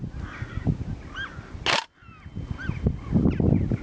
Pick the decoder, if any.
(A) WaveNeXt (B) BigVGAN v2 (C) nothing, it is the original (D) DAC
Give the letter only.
C